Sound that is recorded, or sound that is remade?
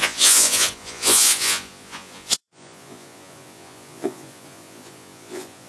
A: remade